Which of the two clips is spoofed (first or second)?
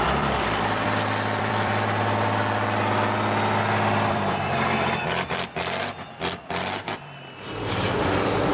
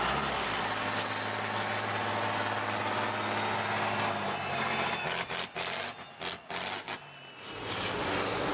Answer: first